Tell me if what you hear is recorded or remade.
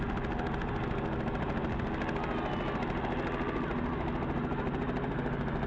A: recorded